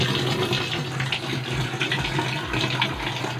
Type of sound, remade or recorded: recorded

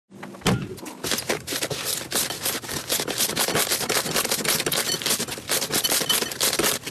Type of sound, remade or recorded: remade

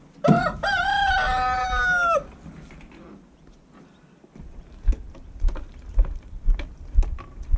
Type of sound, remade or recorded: recorded